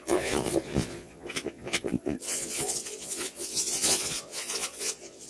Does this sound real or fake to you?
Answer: fake